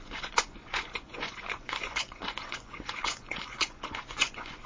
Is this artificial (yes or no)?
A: yes